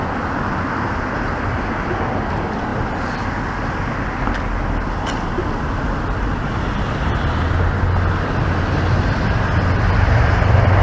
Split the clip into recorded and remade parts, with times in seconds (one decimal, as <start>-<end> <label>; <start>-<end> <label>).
0.0-10.8 recorded